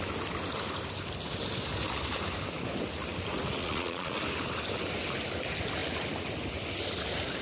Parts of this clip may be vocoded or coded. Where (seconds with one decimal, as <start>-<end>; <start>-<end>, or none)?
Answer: 3.6-4.2